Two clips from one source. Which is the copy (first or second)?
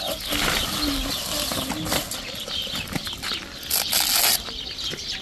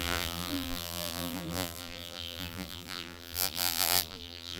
second